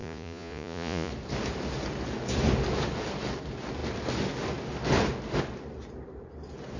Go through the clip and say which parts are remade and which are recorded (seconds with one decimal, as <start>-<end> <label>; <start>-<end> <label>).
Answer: 0.0-1.1 remade; 1.1-6.8 recorded